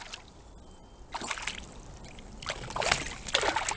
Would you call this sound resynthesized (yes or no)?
no